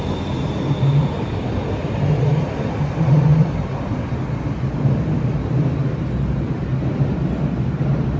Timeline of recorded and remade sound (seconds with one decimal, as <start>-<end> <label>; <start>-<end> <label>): 0.0-8.2 recorded